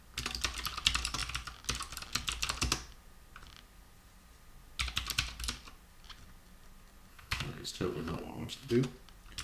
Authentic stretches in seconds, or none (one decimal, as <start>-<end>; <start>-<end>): 0.0-7.1; 8.7-9.4